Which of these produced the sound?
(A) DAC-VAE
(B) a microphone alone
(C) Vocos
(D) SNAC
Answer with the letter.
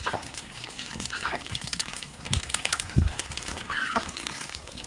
D